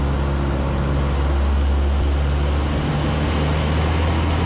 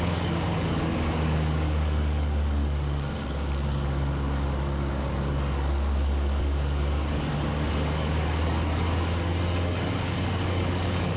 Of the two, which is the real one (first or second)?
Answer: first